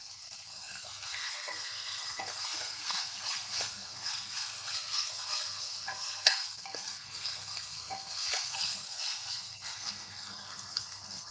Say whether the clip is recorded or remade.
remade